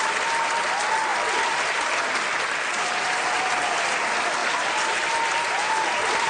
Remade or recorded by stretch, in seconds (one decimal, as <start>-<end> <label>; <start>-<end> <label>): 0.0-6.3 recorded